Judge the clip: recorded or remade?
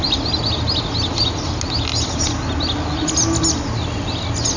recorded